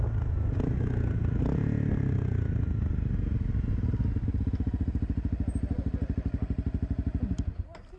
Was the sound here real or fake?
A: real